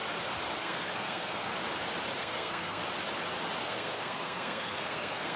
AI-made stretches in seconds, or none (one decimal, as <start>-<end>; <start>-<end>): 0.6-1.5; 2.2-2.8; 3.6-5.4